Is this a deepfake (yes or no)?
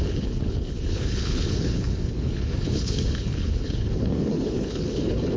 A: yes